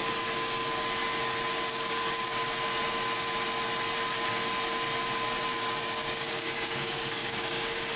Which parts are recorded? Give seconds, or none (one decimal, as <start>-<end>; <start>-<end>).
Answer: 0.0-1.7; 2.4-5.5